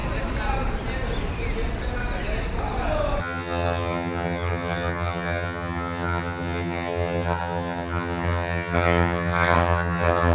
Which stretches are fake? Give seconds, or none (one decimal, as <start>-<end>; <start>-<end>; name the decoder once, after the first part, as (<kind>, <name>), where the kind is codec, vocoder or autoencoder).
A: 3.2-10.3 (vocoder, HiFi-GAN)